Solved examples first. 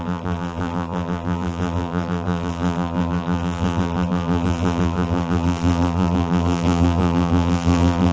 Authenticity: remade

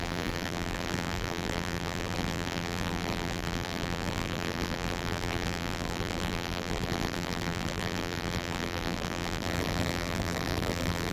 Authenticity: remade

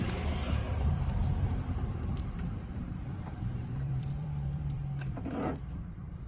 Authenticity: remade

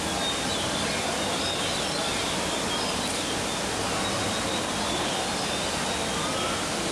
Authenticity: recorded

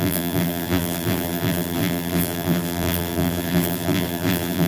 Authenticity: remade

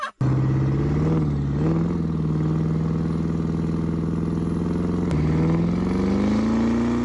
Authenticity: recorded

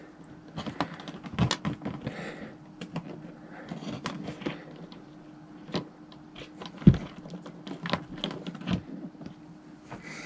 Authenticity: recorded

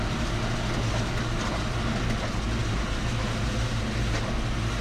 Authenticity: recorded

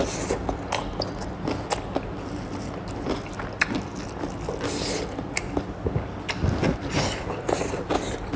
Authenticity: recorded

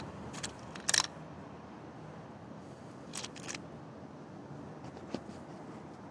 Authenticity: recorded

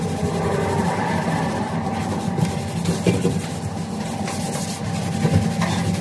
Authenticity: recorded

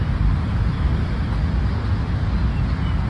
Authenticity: recorded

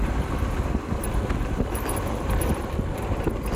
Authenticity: remade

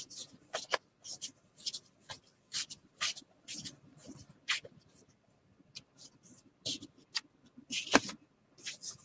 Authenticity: remade